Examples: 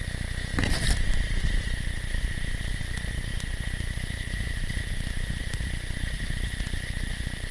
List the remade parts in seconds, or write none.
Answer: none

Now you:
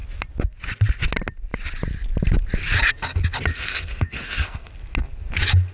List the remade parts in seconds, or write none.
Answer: 3.5-4.7 (codec, SNAC)

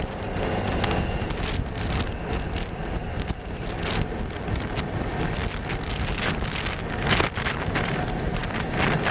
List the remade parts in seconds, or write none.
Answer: none

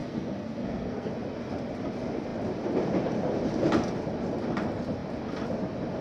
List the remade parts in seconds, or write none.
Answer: 0.0-1.1 (codec, SNAC)

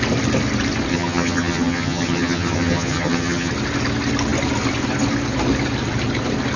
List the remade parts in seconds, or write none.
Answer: 0.9-3.5 (vocoder, HiFi-GAN)

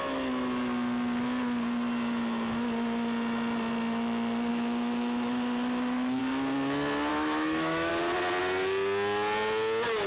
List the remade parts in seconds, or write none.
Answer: 4.5-6.2 (autoencoder, DAC-VAE); 7.1-7.9